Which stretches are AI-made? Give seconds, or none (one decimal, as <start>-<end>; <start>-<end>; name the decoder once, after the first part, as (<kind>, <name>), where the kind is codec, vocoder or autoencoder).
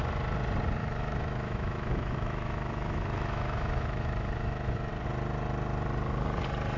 0.8-4.9 (autoencoder, DAC-VAE)